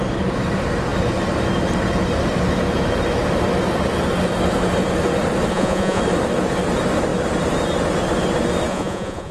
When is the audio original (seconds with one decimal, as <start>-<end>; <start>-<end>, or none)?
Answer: 0.0-5.5; 6.0-8.7